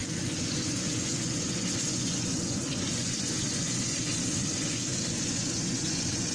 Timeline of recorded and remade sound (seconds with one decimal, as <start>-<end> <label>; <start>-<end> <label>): 0.0-6.3 remade